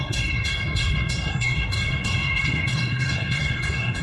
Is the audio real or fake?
fake